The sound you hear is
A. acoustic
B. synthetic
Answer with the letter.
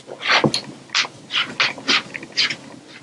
A